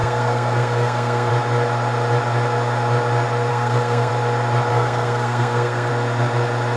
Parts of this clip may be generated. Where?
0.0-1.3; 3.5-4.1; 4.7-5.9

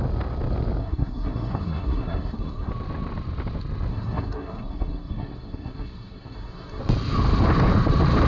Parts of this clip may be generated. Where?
0.8-2.7; 3.9-6.8

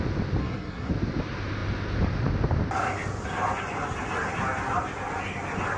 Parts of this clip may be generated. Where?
0.4-0.9